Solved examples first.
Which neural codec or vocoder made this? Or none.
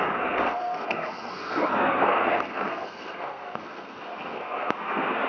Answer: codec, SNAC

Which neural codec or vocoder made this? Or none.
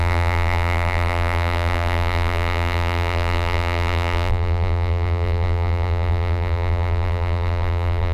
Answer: vocoder, BigVGAN v2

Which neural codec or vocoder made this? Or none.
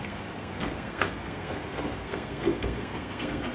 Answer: codec, SNAC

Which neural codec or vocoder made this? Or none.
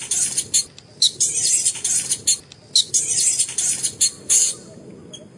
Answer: none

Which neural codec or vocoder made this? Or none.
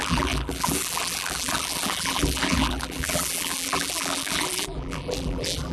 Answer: vocoder, BigVGAN v2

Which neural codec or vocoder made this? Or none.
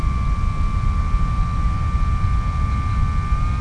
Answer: none